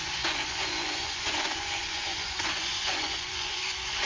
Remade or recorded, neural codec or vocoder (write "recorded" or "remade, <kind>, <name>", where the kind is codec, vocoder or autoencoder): remade, vocoder, Vocos